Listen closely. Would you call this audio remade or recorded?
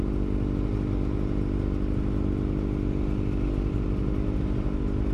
recorded